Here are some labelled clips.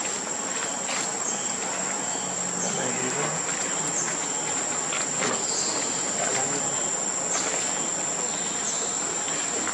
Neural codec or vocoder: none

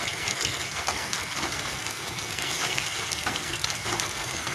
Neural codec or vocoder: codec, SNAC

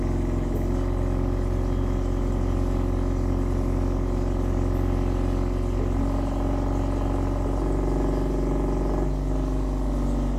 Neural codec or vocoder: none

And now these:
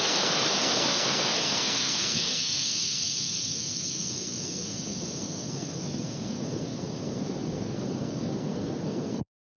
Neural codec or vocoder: codec, SNAC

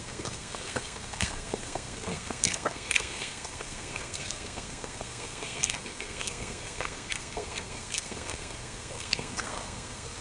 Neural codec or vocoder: codec, SNAC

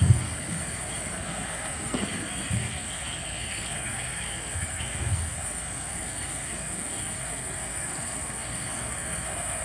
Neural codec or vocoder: codec, SNAC